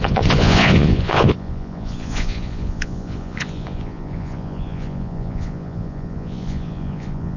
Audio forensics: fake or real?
fake